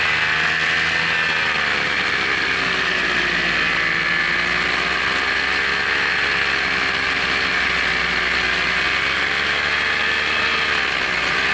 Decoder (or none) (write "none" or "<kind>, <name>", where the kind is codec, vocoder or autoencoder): none